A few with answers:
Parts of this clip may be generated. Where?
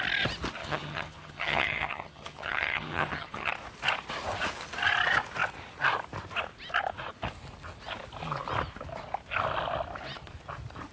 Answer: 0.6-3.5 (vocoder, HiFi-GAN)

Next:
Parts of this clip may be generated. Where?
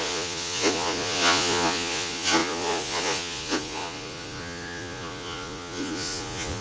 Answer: 0.0-6.6 (vocoder, Vocos)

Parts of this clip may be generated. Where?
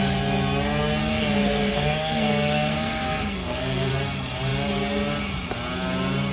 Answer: 1.0-3.9 (codec, SNAC)